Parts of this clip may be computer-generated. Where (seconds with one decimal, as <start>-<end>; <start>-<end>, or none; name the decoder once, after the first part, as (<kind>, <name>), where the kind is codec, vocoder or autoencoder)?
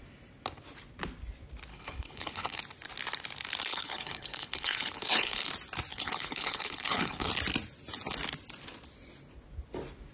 1.7-2.6 (codec, HILCodec); 3.7-5.5; 5.9-7.3